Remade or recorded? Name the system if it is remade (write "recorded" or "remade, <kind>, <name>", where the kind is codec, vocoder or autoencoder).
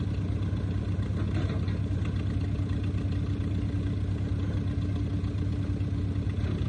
recorded